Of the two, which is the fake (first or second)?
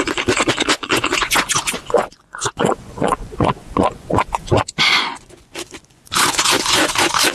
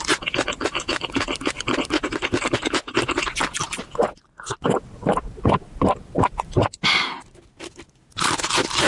first